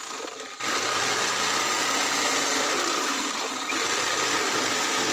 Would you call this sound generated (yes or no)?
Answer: no